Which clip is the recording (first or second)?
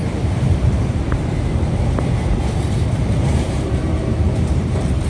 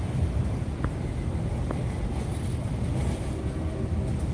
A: second